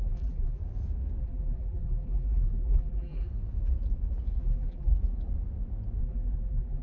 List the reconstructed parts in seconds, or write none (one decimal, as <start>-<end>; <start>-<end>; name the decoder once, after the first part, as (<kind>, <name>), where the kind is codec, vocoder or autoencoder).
0.0-0.6 (vocoder, BigVGAN v2); 1.2-3.3; 4.4-4.9; 6.0-6.8

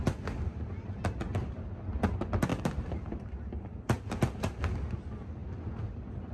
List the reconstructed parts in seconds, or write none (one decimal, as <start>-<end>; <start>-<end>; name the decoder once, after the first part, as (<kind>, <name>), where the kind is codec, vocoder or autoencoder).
2.5-3.8 (vocoder, BigVGAN v2)

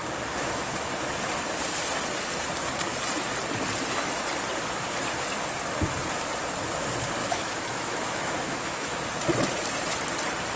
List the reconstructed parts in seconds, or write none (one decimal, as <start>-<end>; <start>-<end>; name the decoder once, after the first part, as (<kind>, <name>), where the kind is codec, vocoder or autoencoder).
7.2-9.0 (autoencoder, DAC-VAE)

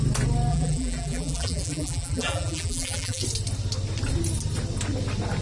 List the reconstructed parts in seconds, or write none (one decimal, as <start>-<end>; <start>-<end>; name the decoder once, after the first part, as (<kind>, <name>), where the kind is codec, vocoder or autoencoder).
0.5-3.2 (vocoder, BigVGAN v2)

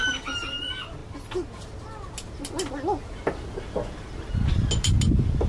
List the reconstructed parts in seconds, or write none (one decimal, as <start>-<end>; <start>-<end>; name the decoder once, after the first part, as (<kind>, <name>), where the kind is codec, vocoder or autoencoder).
none